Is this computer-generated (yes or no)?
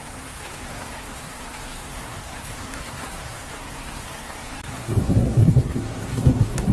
yes